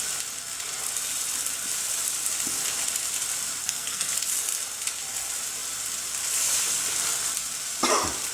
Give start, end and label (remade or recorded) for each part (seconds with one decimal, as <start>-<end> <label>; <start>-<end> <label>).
0.0-3.6 recorded; 3.6-4.1 remade; 4.1-8.3 recorded